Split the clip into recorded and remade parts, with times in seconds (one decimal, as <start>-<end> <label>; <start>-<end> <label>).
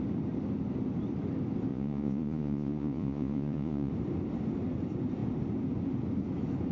0.0-1.7 recorded; 1.7-3.9 remade; 3.9-6.7 recorded